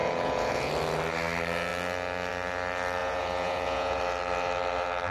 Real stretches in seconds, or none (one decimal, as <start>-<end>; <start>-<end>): 0.7-3.0; 4.0-5.1